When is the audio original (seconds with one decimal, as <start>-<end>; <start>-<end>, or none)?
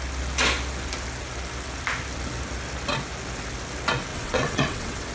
0.0-4.1